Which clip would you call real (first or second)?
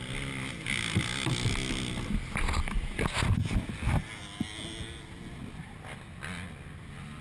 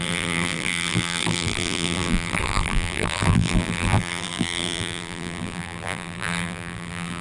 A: first